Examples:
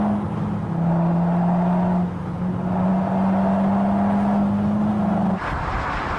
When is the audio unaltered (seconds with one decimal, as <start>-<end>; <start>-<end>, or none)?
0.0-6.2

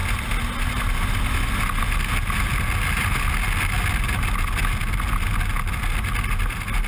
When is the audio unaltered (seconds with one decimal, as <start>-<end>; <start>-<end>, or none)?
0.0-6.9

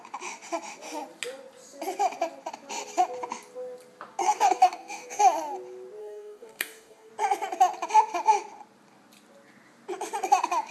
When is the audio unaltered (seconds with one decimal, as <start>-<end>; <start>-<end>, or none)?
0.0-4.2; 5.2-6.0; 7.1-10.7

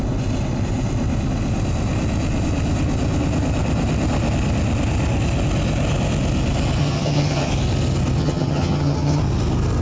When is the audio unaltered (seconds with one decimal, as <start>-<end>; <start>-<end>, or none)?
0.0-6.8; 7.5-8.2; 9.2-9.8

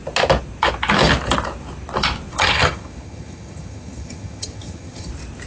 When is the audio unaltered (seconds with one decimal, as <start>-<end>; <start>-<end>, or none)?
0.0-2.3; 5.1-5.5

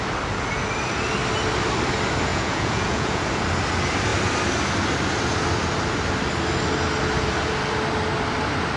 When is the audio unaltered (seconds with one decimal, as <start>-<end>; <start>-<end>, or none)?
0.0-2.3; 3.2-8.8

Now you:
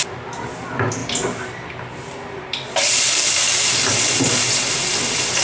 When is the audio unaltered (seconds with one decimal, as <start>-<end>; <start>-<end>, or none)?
0.0-5.4

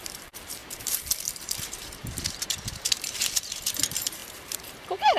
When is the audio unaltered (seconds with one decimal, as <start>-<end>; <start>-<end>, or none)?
none